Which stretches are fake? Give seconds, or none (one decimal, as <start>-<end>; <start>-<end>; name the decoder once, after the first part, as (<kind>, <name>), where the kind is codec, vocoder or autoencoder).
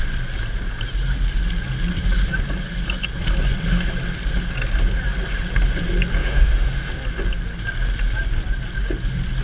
6.2-6.9 (autoencoder, DAC-VAE)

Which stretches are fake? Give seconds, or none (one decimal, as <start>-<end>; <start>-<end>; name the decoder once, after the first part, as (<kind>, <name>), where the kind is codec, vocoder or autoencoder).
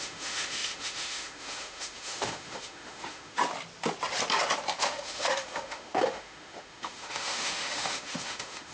0.0-3.4 (autoencoder, DAC-VAE); 4.8-8.7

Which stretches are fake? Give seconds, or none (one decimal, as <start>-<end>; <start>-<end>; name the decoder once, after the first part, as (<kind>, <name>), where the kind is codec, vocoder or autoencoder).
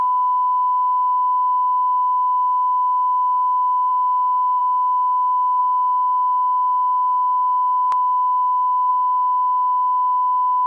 none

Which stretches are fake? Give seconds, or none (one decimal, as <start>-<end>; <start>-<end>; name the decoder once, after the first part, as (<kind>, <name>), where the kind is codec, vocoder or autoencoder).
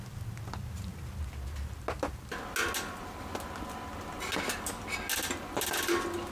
none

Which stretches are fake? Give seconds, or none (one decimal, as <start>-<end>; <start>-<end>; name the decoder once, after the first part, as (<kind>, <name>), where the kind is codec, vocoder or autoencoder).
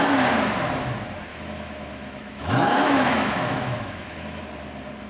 1.3-4.4 (autoencoder, DAC-VAE)